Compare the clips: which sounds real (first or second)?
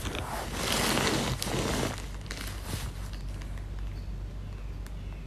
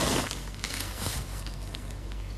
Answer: first